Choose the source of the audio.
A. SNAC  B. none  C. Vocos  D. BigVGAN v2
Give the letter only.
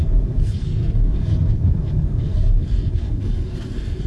A